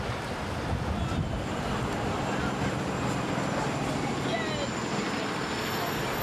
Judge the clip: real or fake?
real